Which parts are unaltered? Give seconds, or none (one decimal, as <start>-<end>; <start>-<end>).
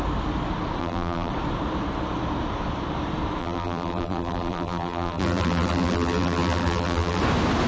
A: 0.0-0.8; 1.3-3.4; 7.2-7.7